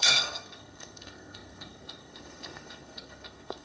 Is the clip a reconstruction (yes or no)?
yes